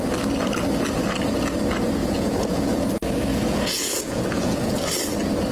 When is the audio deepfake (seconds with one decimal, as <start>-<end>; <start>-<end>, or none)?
2.0-2.9; 3.3-4.8